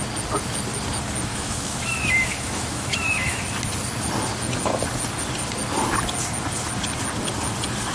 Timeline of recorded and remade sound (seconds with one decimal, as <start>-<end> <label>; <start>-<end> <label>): 0.0-1.3 recorded; 1.3-3.4 remade; 3.4-7.9 recorded